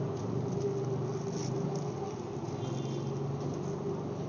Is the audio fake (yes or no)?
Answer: no